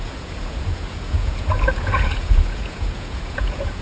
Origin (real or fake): fake